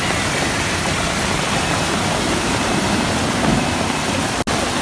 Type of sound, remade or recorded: recorded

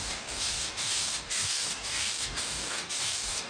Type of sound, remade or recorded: remade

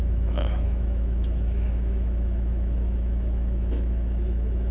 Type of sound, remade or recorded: remade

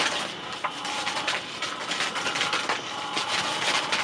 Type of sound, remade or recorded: recorded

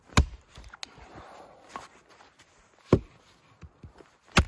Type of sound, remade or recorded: recorded